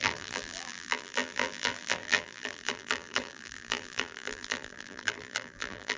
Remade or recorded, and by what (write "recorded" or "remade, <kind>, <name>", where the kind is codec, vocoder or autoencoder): remade, vocoder, BigVGAN v2